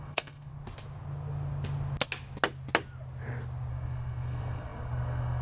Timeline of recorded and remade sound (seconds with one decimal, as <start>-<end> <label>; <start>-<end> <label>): 0.0-0.5 remade; 0.5-3.7 recorded; 3.7-5.4 remade